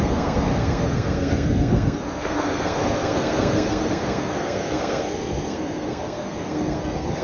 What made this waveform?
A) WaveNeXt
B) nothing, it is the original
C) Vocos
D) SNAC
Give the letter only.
D